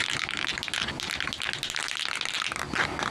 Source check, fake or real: real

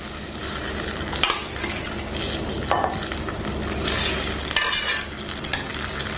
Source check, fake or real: real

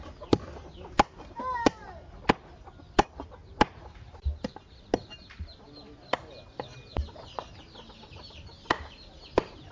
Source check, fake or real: real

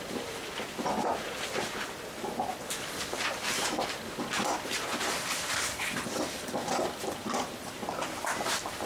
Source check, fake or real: fake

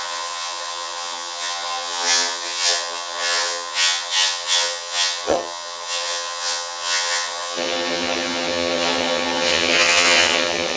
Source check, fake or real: fake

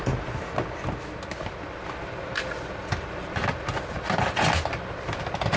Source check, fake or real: real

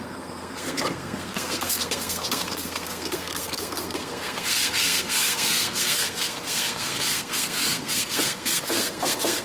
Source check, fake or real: fake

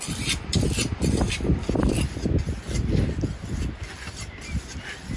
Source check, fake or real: real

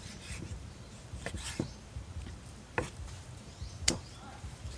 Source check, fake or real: fake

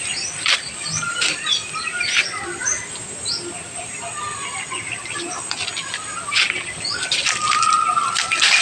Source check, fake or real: real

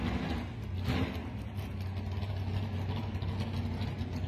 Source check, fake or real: real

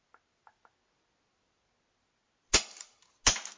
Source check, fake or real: real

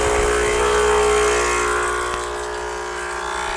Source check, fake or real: real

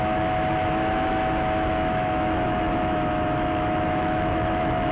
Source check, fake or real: fake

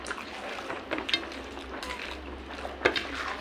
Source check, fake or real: real